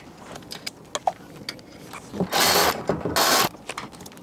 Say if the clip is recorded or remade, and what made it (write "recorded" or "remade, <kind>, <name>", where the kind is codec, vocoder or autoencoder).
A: recorded